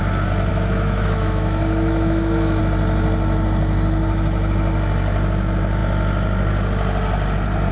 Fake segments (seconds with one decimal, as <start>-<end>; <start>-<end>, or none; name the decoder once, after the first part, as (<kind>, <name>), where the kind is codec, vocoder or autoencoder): 0.5-2.6 (autoencoder, DAC-VAE)